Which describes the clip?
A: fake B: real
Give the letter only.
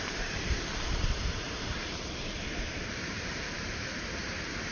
A